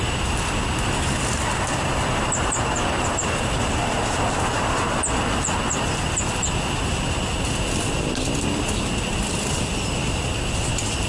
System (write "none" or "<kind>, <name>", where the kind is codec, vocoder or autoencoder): none